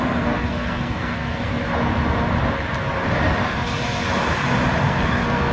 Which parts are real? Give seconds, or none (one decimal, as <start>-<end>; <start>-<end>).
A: 1.5-4.8